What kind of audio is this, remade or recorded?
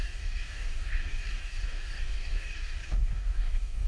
remade